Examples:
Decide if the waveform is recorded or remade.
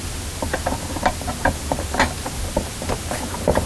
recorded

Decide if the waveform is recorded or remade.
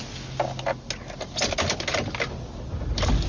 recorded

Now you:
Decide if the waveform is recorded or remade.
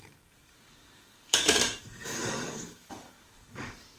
remade